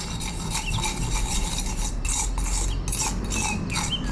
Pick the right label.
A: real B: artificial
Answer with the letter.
A